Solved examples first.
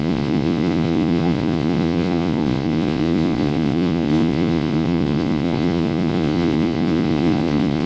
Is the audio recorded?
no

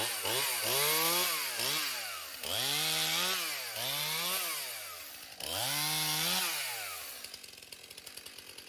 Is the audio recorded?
yes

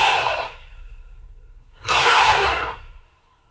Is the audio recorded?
no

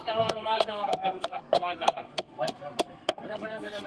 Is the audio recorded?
no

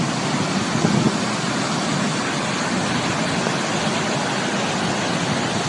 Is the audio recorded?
yes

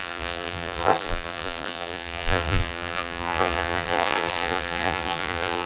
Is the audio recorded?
no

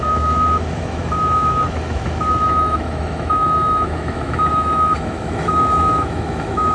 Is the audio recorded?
no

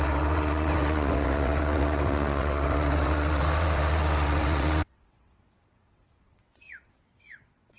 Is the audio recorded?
no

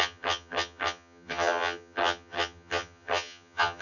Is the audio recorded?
no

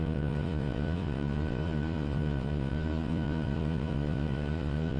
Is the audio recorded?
no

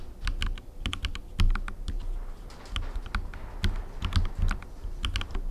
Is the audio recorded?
yes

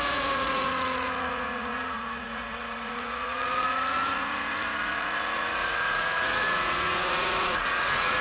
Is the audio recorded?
no